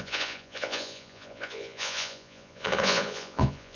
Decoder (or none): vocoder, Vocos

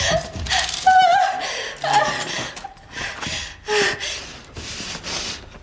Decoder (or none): none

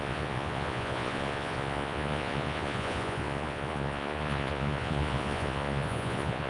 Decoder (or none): vocoder, Vocos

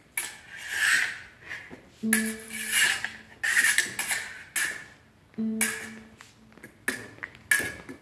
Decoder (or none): none